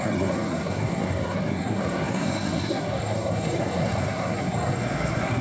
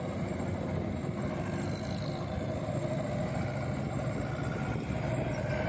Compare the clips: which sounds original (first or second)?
second